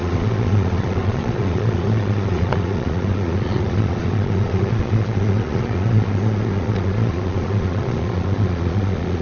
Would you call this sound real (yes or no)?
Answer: no